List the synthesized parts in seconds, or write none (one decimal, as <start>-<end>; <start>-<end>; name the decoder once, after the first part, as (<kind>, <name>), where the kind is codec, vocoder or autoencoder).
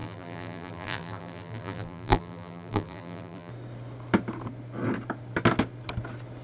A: 0.0-3.5 (vocoder, BigVGAN v2)